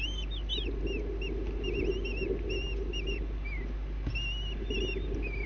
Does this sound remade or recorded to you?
recorded